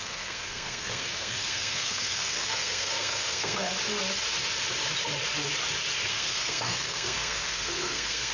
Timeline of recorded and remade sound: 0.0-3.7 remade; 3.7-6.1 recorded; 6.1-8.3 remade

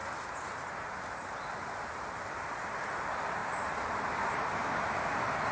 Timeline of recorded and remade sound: 0.0-1.5 remade; 1.5-3.4 recorded; 3.4-4.8 remade; 4.8-5.5 recorded